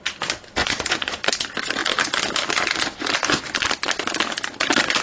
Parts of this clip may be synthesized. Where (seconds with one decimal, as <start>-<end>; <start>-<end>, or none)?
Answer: 0.6-1.3